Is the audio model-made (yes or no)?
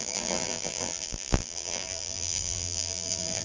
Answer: yes